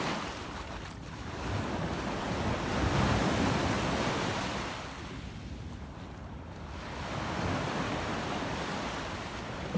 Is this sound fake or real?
real